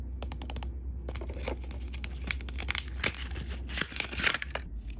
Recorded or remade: recorded